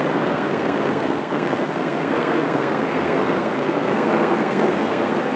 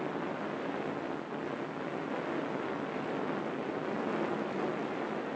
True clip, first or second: second